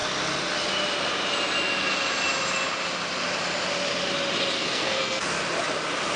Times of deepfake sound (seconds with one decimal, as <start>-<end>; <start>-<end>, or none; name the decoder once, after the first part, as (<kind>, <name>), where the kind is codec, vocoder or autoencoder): 4.6-5.2 (codec, SNAC)